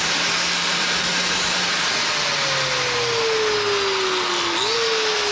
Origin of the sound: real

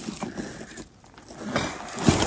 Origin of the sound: real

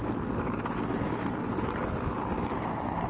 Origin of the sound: real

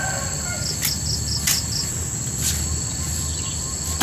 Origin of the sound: real